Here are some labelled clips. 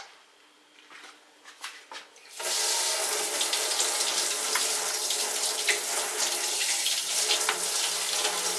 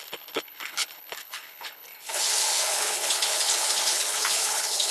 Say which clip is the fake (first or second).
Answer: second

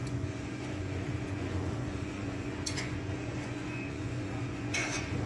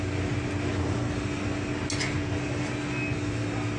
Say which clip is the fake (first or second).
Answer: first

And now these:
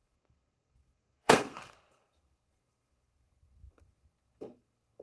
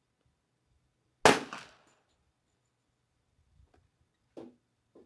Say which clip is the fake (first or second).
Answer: first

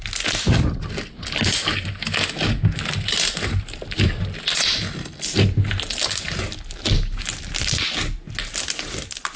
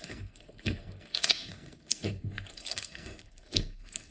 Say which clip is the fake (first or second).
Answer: second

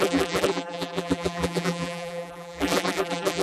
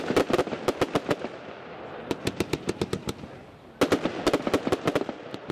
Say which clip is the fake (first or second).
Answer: first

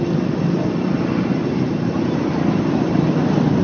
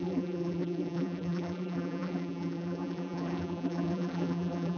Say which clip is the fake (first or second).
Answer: second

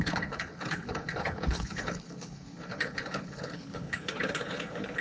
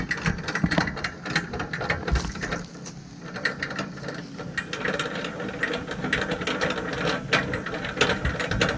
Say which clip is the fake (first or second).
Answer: first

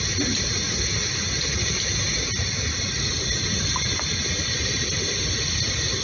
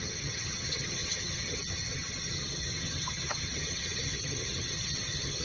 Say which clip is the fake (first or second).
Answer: second